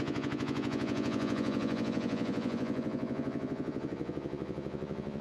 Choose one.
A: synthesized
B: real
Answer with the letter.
A